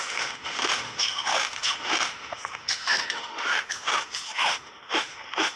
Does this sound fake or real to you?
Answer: fake